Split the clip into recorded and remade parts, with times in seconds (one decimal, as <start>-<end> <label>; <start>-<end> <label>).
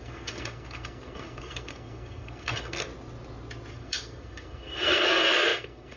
0.0-2.9 remade; 2.9-3.7 recorded; 3.7-6.0 remade